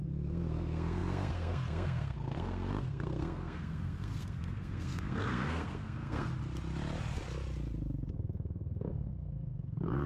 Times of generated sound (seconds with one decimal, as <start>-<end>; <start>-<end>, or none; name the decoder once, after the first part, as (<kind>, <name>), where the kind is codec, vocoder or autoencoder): 0.0-6.3 (codec, SNAC); 8.1-10.1